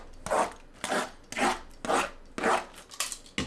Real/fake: real